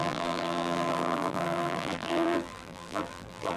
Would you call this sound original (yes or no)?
no